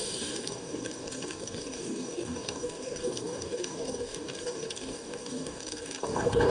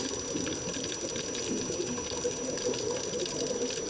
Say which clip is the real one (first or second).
second